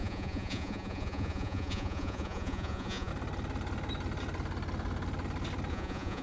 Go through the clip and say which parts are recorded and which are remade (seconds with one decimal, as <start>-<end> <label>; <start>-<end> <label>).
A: 0.0-3.1 remade; 3.1-5.7 recorded; 5.7-6.2 remade